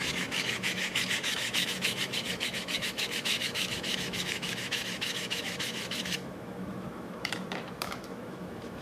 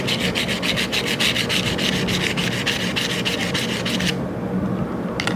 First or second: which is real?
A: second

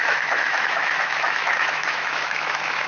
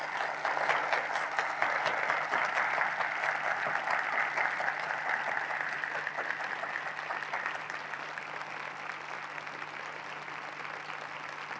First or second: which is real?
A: second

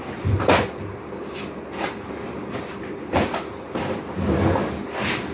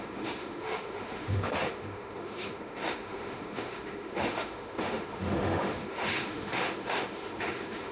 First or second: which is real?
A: first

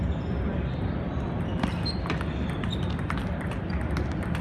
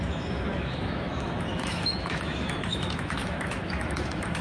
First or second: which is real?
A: first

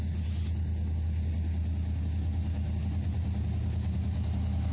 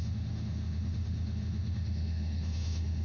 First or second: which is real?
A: first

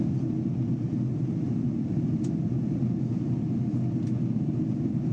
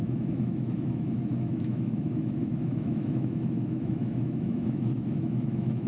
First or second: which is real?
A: first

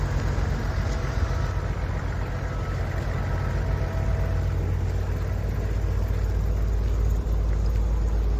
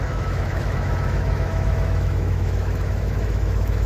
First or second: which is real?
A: first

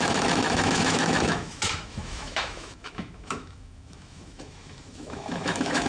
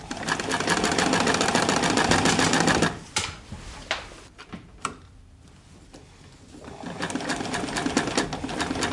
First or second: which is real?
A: second